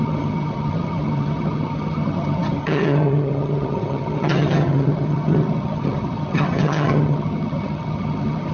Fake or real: fake